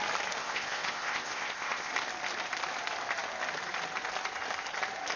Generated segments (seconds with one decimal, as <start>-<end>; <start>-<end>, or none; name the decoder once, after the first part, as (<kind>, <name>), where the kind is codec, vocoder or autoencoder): 0.4-1.9 (codec, ZipCodec)